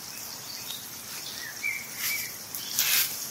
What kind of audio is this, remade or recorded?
remade